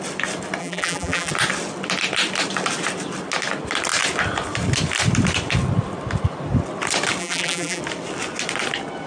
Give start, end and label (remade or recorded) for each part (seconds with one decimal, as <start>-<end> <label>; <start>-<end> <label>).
0.0-0.6 recorded; 0.6-1.3 remade; 1.3-7.2 recorded; 7.2-7.8 remade; 7.8-9.1 recorded